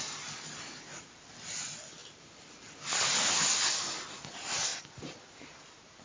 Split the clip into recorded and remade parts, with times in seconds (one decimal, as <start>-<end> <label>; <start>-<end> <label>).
0.0-6.0 recorded